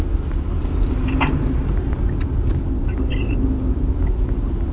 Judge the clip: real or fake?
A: real